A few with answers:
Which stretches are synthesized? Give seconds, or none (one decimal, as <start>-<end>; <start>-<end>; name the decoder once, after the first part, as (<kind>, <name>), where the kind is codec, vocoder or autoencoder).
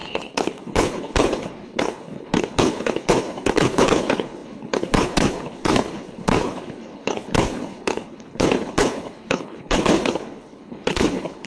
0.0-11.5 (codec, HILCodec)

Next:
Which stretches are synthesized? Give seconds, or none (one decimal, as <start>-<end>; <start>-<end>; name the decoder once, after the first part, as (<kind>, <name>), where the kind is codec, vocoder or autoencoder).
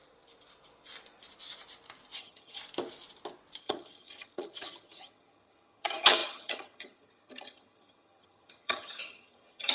2.2-2.6 (vocoder, HiFi-GAN); 3.6-9.7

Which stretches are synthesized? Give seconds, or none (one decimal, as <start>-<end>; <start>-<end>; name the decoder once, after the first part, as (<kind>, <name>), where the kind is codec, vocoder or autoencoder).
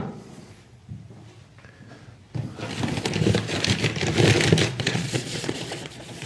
0.0-0.8 (vocoder, Vocos); 4.6-6.3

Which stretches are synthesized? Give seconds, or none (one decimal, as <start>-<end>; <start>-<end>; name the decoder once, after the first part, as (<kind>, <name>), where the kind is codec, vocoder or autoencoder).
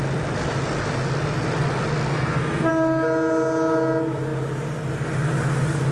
2.1-2.7 (codec, SNAC)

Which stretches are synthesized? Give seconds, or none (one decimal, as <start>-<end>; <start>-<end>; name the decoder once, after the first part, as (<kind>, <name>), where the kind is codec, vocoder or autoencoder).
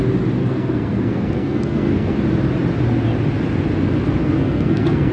0.4-2.2 (codec, SNAC); 4.2-5.1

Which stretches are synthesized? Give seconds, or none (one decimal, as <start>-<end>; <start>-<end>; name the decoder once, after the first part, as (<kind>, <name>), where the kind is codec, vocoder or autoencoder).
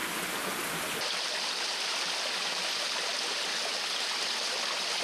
none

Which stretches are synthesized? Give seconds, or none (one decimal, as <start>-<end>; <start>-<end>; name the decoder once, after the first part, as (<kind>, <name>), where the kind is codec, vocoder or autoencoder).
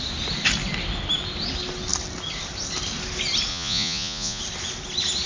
3.5-4.4 (vocoder, Vocos)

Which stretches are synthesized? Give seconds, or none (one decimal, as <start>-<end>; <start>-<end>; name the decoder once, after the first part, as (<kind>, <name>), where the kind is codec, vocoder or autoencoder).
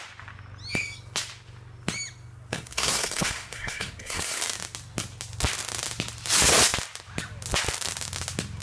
2.5-4.4 (codec, SNAC)